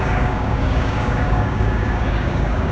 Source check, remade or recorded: remade